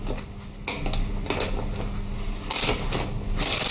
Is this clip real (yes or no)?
yes